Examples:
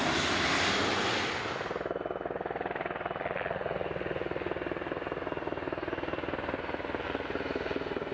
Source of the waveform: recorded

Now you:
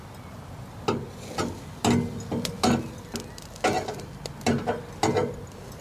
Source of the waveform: recorded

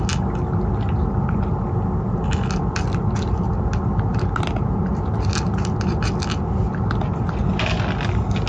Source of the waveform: recorded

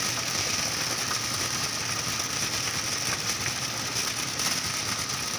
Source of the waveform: recorded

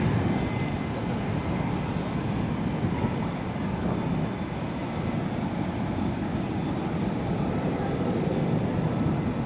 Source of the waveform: recorded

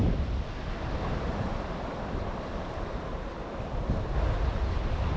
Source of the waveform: recorded